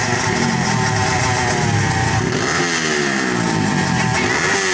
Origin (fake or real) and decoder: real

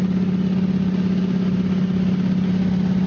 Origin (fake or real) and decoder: real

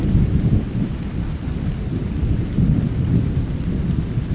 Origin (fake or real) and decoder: real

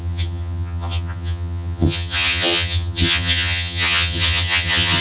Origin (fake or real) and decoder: fake, vocoder, HiFi-GAN